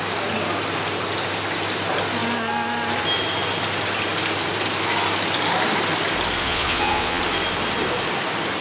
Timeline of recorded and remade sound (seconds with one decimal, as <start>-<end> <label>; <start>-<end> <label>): 0.0-6.4 recorded; 6.4-7.2 remade; 7.2-8.6 recorded